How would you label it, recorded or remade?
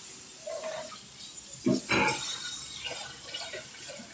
recorded